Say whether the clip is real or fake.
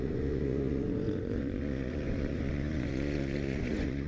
fake